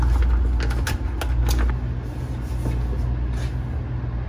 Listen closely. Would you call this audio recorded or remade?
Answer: recorded